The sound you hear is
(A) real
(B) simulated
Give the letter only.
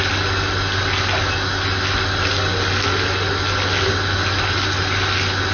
A